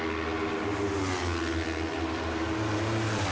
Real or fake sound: real